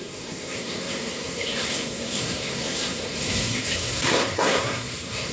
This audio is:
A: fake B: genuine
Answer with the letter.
A